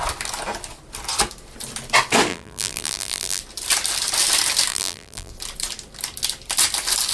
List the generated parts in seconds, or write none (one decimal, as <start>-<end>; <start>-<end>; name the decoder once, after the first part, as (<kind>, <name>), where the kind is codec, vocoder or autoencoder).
2.3-3.4 (vocoder, BigVGAN v2); 4.7-5.3